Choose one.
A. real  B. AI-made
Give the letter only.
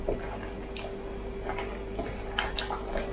A